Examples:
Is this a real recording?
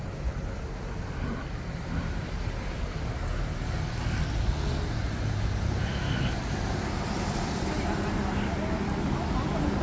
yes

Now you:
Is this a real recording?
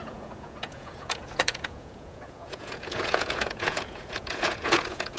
no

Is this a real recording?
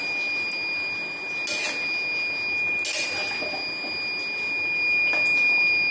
yes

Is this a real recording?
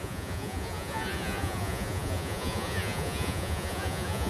no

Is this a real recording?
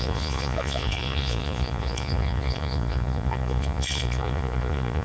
no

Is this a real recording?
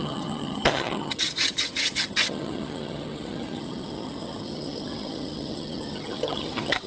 no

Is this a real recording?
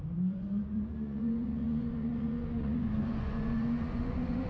no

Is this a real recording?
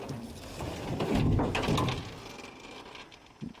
yes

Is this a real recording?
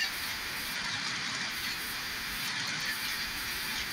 yes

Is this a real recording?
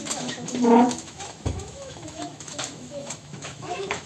no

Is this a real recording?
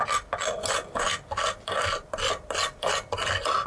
yes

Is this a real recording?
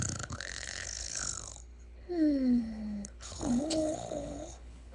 no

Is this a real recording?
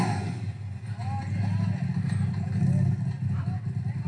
yes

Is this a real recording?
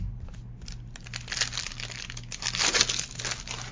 yes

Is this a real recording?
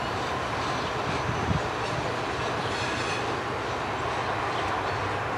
yes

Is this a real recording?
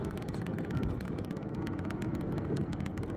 no